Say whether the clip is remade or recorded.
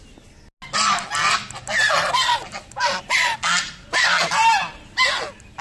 recorded